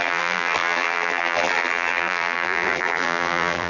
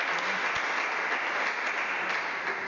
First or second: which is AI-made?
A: first